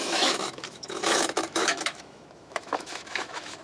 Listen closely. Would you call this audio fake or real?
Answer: fake